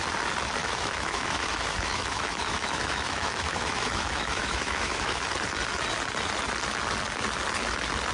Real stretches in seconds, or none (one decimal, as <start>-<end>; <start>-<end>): 0.0-0.6; 5.2-8.1